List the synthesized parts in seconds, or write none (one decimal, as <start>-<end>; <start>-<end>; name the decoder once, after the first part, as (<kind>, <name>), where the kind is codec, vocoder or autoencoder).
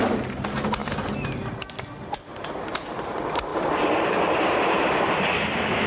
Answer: 3.5-4.2 (vocoder, BigVGAN v2)